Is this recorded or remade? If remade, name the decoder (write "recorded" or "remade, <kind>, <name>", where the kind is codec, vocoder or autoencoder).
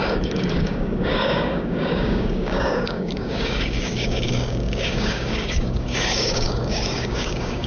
remade, codec, DAC